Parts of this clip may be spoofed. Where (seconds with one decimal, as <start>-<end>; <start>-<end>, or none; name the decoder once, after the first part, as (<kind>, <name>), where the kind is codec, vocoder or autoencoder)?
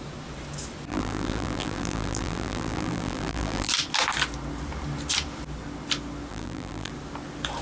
0.9-3.7 (vocoder, BigVGAN v2); 6.3-6.9